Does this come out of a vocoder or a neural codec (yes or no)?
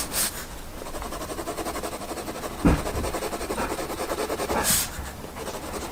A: no